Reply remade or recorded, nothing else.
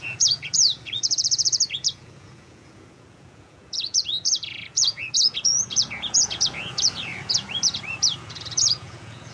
remade